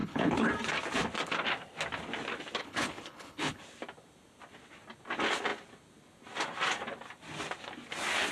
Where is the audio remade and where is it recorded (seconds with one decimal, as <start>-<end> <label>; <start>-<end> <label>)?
0.0-0.5 remade; 0.5-2.6 recorded; 2.6-3.6 remade; 3.6-8.3 recorded